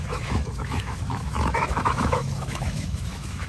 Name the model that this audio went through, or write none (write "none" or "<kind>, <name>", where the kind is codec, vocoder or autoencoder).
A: autoencoder, DAC-VAE